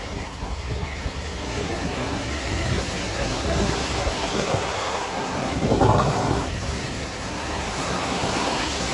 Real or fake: fake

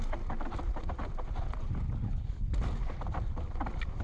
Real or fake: real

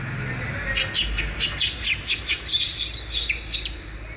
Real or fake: real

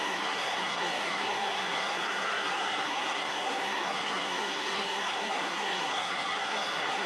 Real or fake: fake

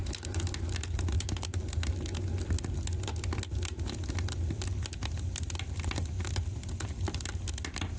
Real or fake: real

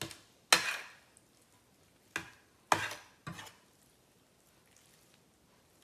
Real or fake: real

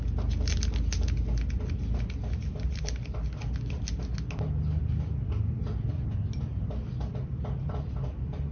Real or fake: real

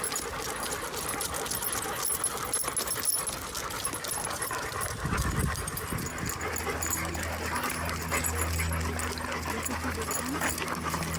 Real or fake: real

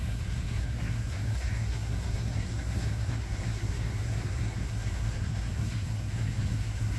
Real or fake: fake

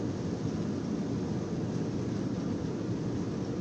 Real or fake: real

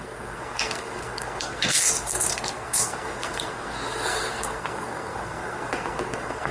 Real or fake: fake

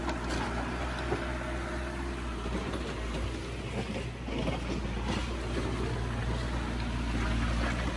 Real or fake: real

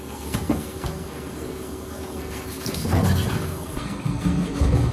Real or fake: fake